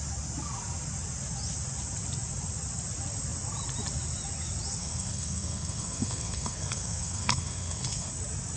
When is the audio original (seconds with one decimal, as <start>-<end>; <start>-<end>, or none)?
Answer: 0.0-4.8; 8.1-8.6